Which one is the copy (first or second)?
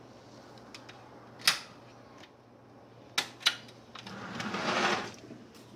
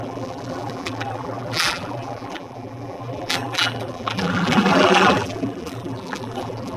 second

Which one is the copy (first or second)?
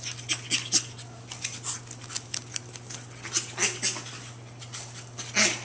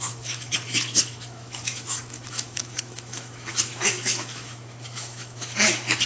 second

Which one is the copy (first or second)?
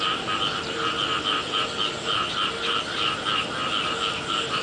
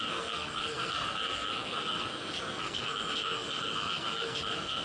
second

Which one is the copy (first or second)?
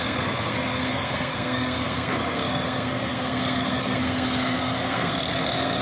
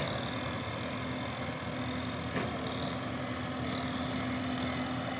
first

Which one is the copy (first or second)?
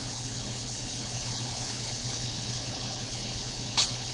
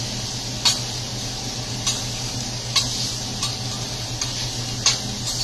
first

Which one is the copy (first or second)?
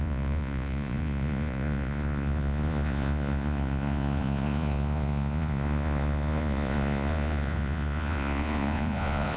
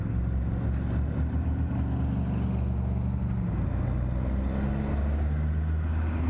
first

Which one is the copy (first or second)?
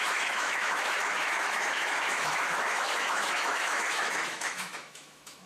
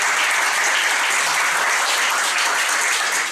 first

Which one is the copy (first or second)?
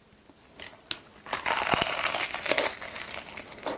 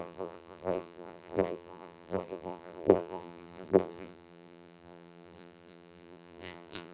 second